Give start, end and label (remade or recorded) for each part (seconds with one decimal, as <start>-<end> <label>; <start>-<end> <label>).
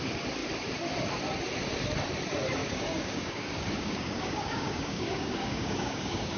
0.0-2.6 recorded; 2.6-6.4 remade